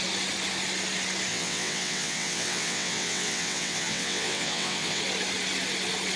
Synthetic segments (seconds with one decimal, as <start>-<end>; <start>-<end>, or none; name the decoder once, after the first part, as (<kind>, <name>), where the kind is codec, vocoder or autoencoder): 1.3-5.0 (vocoder, WaveNeXt)